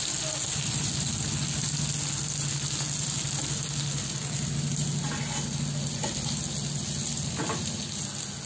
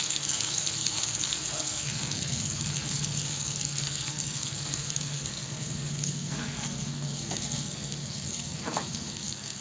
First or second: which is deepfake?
second